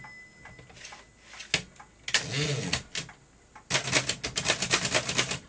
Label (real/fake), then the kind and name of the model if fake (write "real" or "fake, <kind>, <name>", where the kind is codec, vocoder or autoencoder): real